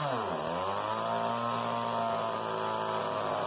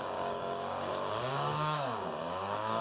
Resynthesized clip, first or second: second